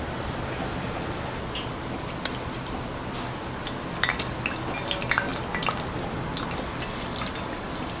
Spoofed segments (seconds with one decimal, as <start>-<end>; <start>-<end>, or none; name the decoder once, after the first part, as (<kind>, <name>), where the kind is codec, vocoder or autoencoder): none